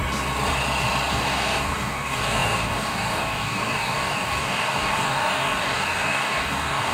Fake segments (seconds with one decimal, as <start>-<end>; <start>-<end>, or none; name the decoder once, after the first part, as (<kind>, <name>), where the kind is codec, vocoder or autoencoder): 1.1-6.9 (codec, DAC)